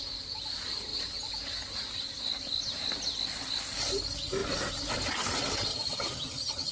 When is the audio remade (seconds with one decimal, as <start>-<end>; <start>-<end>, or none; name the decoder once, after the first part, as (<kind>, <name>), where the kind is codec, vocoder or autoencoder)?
5.7-6.7 (vocoder, HiFi-GAN)